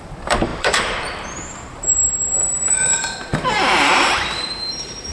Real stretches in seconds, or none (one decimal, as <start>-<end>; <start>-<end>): none